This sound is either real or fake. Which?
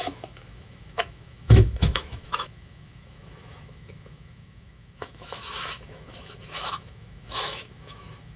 fake